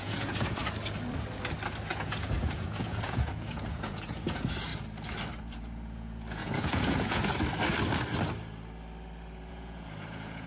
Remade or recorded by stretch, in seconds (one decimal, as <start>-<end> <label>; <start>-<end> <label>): 0.0-0.6 remade; 0.6-1.9 recorded; 1.9-4.7 remade; 4.7-5.4 recorded; 5.4-7.3 remade; 7.3-9.5 recorded; 9.5-10.5 remade